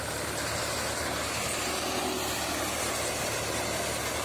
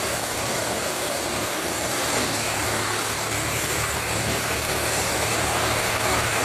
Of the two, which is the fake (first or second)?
second